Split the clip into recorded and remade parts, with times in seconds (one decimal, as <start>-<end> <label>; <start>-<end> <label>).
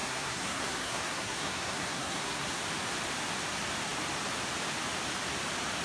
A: 0.0-2.6 remade; 2.6-5.8 recorded